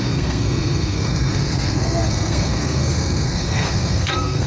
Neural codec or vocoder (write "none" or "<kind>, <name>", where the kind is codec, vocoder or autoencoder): codec, SNAC